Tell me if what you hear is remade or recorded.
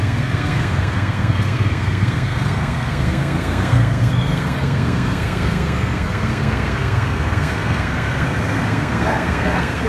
remade